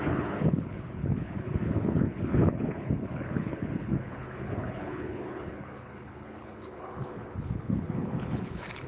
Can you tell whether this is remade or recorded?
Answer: remade